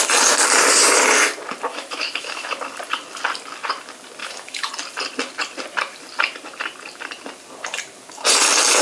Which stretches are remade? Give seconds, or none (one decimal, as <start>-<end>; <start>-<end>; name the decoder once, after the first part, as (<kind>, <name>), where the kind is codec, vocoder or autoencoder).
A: 1.7-2.5 (autoencoder, DAC-VAE); 4.2-4.7